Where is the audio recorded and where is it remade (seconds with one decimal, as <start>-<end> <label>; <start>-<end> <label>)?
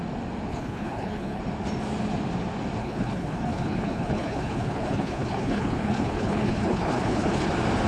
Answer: 0.0-0.5 recorded; 0.5-1.4 remade; 1.4-2.8 recorded; 2.8-7.5 remade; 7.5-7.9 recorded